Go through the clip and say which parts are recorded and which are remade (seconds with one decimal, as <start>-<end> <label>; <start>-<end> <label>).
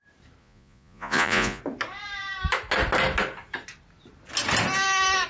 0.0-0.4 recorded; 0.4-1.6 remade; 1.6-5.3 recorded